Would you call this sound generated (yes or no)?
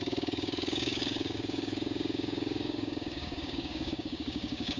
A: yes